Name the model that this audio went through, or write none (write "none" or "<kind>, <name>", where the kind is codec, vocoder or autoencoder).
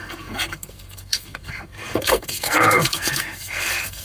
codec, SNAC